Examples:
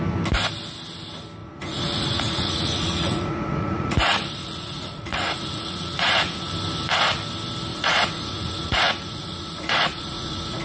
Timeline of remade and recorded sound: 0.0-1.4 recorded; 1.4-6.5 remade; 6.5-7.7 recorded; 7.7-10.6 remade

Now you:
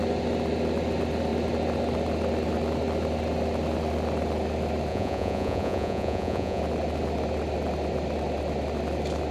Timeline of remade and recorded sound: 0.0-4.9 recorded; 4.9-6.6 remade; 6.6-9.3 recorded

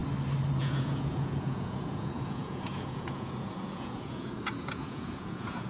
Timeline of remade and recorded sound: 0.0-0.6 recorded; 0.6-5.7 remade

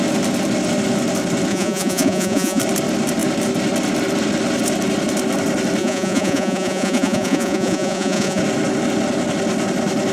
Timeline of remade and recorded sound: 0.0-1.5 recorded; 1.5-2.6 remade; 2.6-5.8 recorded; 5.8-8.4 remade; 8.4-10.1 recorded

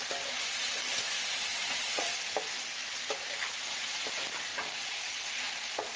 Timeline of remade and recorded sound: 0.0-1.5 recorded; 1.5-2.1 remade; 2.1-4.5 recorded; 4.5-6.0 remade